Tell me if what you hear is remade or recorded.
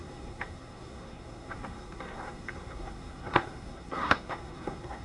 remade